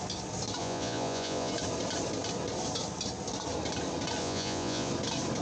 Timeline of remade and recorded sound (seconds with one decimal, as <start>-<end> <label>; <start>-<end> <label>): 0.0-0.6 recorded; 0.6-1.5 remade; 1.5-4.2 recorded; 4.2-4.9 remade; 4.9-5.4 recorded

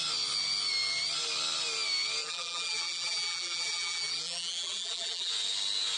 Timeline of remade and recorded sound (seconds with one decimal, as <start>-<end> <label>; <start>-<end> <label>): 0.0-2.2 recorded; 2.2-5.3 remade; 5.3-6.0 recorded

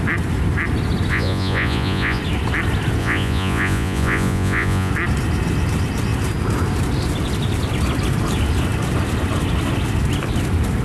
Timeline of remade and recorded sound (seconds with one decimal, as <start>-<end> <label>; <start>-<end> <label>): 0.0-1.1 recorded; 1.1-2.2 remade; 2.2-3.0 recorded; 3.0-4.9 remade; 4.9-10.8 recorded

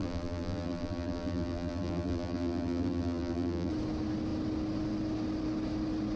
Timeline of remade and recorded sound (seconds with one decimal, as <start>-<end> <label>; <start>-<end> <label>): 0.0-3.7 remade; 3.7-6.2 recorded

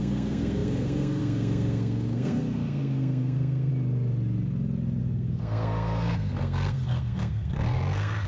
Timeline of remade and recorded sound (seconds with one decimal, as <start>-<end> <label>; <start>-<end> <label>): 0.0-3.7 remade; 3.7-5.0 recorded; 5.0-8.3 remade

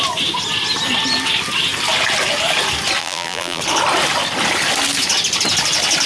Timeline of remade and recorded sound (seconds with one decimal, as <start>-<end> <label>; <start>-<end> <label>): 0.0-3.0 recorded; 3.0-3.6 remade; 3.6-6.1 recorded